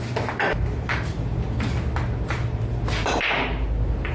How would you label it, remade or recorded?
recorded